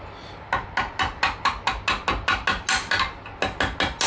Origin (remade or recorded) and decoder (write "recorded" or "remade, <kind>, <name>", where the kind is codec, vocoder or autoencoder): recorded